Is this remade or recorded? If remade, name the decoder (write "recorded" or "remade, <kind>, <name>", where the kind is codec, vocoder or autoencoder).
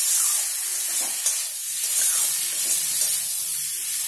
recorded